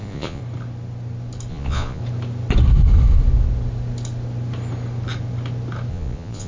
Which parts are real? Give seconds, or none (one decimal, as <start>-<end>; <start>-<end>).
0.4-1.5; 2.0-5.9